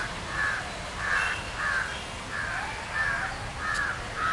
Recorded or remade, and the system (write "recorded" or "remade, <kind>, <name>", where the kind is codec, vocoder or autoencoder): recorded